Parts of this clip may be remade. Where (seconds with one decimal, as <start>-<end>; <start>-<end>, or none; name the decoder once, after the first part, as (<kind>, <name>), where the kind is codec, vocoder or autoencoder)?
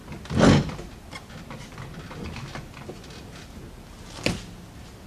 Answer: none